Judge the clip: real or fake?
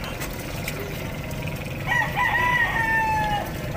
real